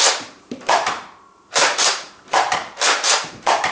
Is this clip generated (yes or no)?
yes